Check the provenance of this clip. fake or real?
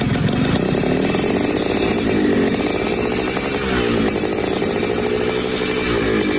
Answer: real